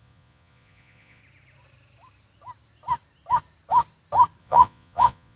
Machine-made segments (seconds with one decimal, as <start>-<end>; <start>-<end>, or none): 0.0-1.2; 4.4-5.4